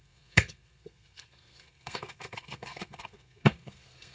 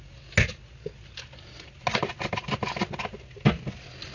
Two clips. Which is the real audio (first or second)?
second